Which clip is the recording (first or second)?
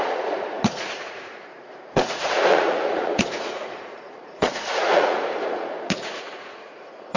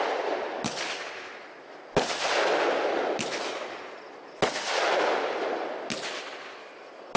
second